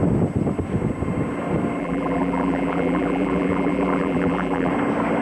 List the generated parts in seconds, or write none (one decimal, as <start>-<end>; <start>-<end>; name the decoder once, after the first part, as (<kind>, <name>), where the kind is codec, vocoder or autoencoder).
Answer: 1.8-4.7 (vocoder, BigVGAN v2)

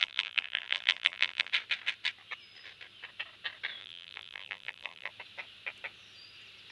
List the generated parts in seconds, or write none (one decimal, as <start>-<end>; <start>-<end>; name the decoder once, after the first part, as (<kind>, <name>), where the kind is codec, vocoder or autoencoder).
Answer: 0.0-1.5 (vocoder, BigVGAN v2); 3.8-5.1

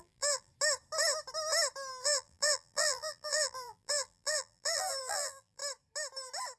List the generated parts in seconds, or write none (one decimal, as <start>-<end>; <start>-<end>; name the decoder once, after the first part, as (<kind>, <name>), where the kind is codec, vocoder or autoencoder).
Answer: 0.0-0.5 (vocoder, BigVGAN v2); 1.9-5.6

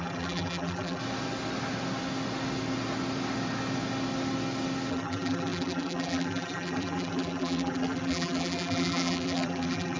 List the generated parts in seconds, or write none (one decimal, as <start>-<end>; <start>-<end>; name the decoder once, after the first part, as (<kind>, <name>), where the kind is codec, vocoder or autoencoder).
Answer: 0.0-1.0 (vocoder, BigVGAN v2); 4.9-10.0